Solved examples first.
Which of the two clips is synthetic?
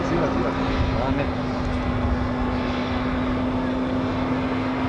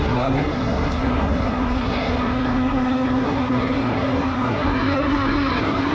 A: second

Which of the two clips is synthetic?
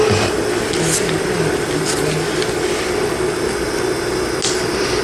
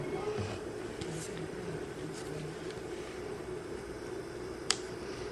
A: second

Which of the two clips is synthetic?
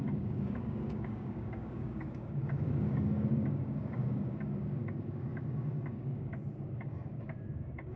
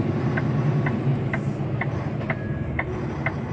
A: first